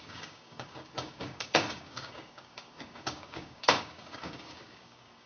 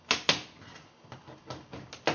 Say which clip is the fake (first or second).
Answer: first